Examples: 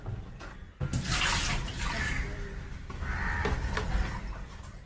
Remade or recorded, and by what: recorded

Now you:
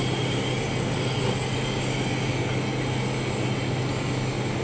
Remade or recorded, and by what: recorded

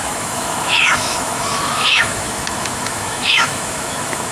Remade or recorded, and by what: remade, autoencoder, DAC-VAE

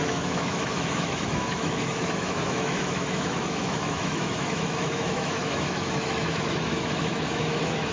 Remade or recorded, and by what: remade, autoencoder, DAC-VAE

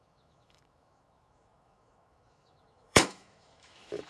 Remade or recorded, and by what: remade, autoencoder, DAC-VAE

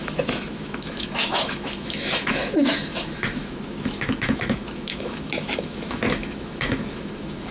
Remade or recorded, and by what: remade, autoencoder, DAC-VAE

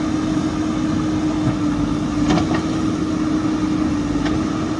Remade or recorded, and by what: recorded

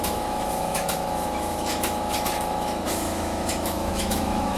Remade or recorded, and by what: remade, autoencoder, DAC-VAE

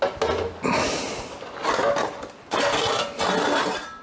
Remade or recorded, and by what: recorded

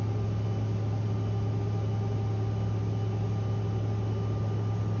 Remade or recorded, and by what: recorded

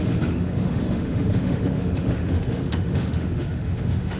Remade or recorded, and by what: remade, autoencoder, DAC-VAE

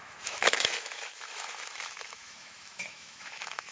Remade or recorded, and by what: remade, autoencoder, DAC-VAE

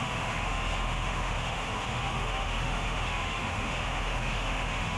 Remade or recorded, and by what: remade, autoencoder, DAC-VAE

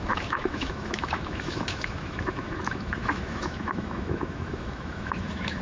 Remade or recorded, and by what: remade, autoencoder, DAC-VAE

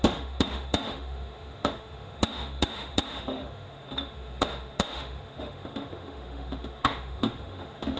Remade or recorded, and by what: remade, autoencoder, DAC-VAE